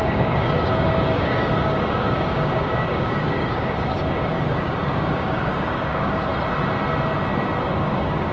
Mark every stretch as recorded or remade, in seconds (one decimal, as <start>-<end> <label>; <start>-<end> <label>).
0.0-6.3 remade; 6.3-7.7 recorded; 7.7-8.3 remade